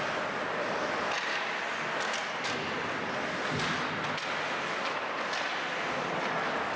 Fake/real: real